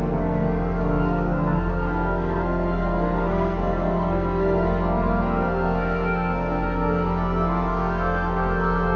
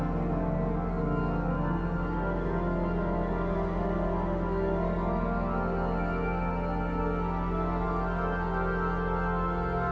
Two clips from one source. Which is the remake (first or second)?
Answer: first